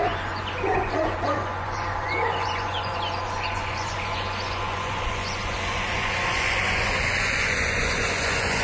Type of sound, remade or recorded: remade